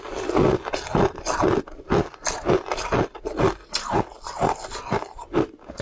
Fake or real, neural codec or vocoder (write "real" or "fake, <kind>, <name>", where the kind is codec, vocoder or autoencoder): real